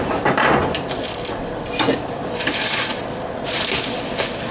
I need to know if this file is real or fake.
real